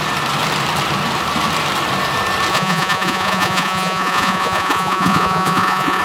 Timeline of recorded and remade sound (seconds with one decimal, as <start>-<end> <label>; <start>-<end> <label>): 0.0-2.5 recorded; 2.5-6.0 remade